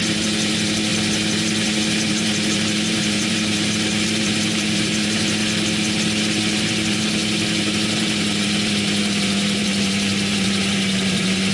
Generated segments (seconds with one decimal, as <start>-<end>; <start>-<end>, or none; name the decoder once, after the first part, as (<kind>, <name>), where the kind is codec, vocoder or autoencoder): 0.0-5.4 (vocoder, BigVGAN v2); 6.2-11.5